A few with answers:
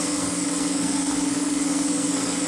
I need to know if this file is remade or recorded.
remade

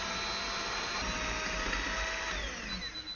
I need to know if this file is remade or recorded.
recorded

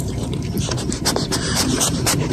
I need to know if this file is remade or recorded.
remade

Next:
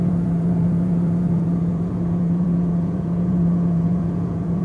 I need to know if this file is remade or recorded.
remade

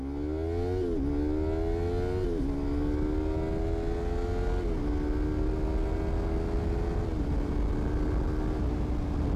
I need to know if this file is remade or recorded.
recorded